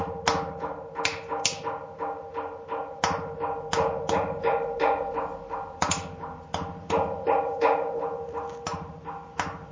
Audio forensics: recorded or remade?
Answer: recorded